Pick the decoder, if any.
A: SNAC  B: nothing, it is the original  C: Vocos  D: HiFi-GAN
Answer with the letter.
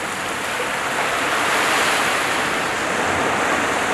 B